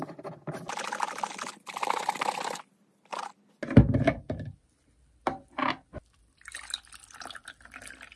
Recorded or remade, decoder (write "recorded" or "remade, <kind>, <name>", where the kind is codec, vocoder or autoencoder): recorded